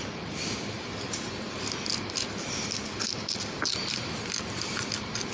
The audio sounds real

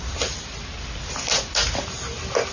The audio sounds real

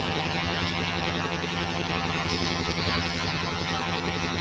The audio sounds fake